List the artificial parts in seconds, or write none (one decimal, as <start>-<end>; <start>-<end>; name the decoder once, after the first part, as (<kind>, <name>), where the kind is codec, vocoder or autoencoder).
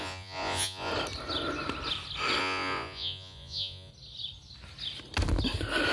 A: 0.0-0.9 (vocoder, Vocos); 2.4-3.9